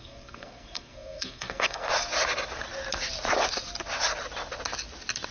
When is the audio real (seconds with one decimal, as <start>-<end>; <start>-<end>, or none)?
1.9-5.3